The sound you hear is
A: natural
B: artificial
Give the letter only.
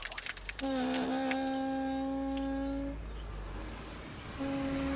A